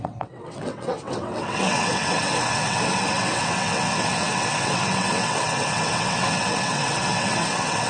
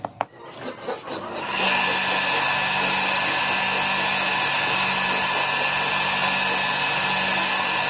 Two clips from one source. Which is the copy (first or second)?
first